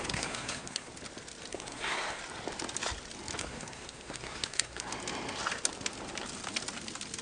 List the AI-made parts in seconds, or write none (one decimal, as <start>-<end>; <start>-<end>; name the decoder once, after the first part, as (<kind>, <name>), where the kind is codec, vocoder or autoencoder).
0.0-0.9 (codec, SNAC); 1.5-2.2; 3.4-4.9